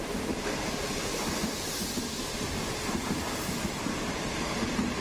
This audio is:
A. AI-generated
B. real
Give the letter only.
A